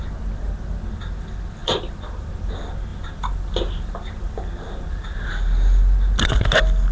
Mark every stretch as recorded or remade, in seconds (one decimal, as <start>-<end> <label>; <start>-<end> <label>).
0.0-1.6 recorded; 1.6-2.5 remade; 2.5-2.9 recorded; 2.9-5.3 remade; 5.3-6.9 recorded